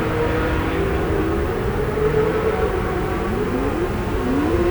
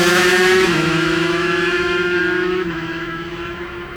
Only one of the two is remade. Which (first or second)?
second